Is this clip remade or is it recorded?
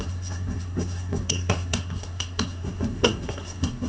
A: remade